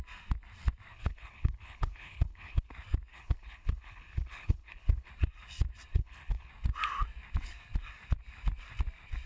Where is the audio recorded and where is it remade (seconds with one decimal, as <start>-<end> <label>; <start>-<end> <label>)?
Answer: 0.0-0.9 recorded; 0.9-2.7 remade; 2.7-3.1 recorded; 3.1-5.1 remade; 5.1-5.9 recorded; 5.9-6.5 remade; 6.5-9.3 recorded